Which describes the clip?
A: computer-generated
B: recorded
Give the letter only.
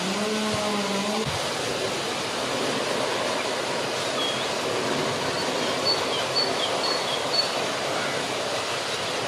B